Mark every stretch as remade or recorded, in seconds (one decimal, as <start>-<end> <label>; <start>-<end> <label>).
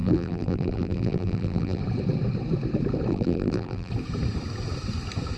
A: 0.0-1.8 remade; 1.8-3.1 recorded; 3.1-3.9 remade; 3.9-5.4 recorded